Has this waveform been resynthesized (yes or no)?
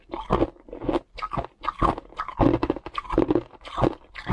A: no